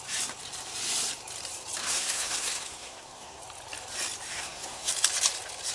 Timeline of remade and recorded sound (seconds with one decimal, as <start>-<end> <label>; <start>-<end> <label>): 0.0-1.8 recorded; 1.8-3.4 remade; 3.4-4.3 recorded; 4.3-4.9 remade; 4.9-5.7 recorded